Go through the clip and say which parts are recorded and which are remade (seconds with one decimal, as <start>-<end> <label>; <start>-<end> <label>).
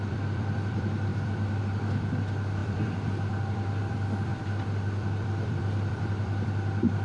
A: 0.0-7.0 remade